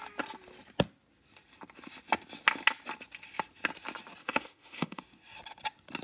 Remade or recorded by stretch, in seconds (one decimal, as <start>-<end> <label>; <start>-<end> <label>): 0.0-4.2 recorded; 4.2-5.0 remade; 5.0-6.0 recorded